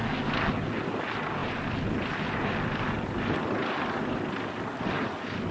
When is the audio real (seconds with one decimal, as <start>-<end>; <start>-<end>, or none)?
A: 0.0-1.4; 3.4-5.5

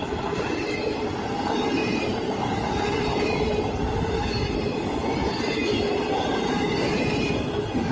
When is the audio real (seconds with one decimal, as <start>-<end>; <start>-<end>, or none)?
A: 0.0-1.8; 2.4-7.9

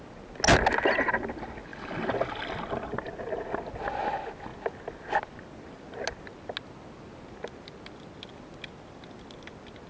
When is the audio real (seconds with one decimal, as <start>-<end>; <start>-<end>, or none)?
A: 0.0-1.7; 2.3-9.9

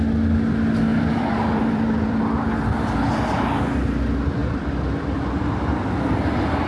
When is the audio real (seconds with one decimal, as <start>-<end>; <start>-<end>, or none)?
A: 0.0-0.9; 2.2-4.4

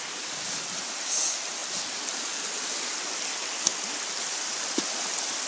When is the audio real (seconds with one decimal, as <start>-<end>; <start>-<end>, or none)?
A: 0.0-5.5

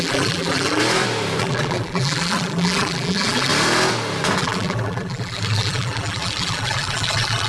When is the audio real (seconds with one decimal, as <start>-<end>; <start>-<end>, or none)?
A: 0.8-1.4; 3.5-4.4

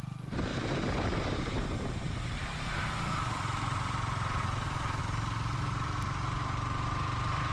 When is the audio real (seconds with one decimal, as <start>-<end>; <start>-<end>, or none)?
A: 0.0-0.5; 5.0-7.5

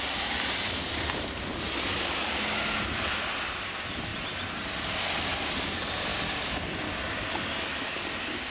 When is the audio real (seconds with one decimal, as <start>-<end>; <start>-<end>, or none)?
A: 4.1-5.2; 6.1-7.1